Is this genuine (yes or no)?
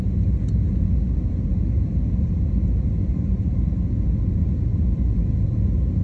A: yes